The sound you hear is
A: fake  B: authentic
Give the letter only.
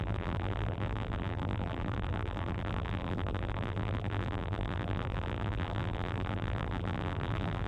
A